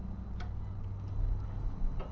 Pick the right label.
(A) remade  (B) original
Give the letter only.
B